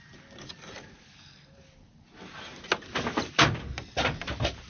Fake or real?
real